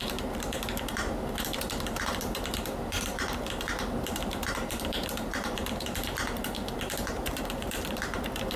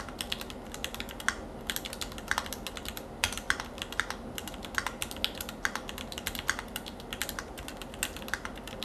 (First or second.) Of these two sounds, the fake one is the first